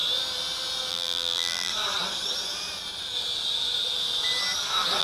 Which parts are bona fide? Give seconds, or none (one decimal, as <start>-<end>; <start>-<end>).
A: 0.0-0.9; 1.7-5.0